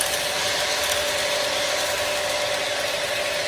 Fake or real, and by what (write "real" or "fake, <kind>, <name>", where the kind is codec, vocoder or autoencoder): real